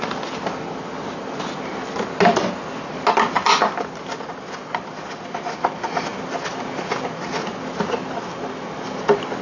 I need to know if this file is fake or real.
real